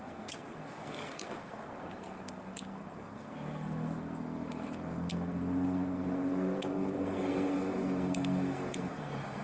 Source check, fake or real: fake